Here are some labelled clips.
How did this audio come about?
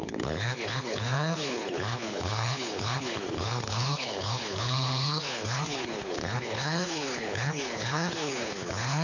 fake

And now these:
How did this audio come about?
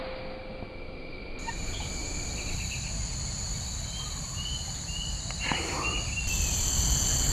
real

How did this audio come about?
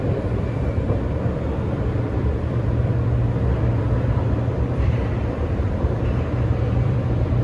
fake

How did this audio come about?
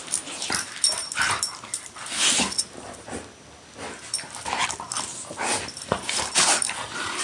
fake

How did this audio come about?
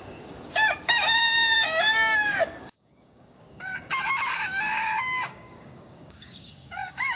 fake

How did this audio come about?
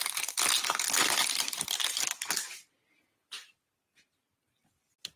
real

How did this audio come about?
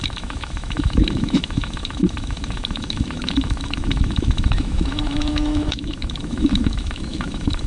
fake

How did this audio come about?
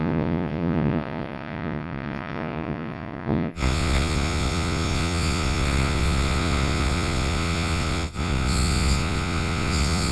fake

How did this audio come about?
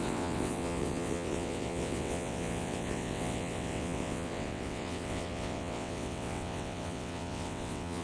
fake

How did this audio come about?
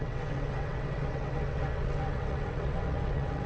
fake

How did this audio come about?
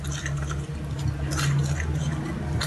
real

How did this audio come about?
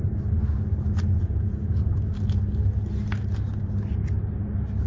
real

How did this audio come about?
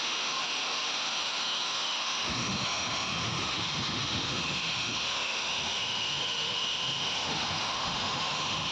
fake